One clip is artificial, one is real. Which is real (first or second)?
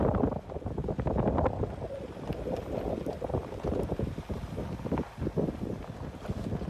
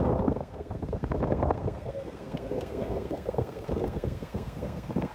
first